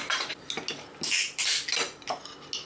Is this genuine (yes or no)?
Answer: yes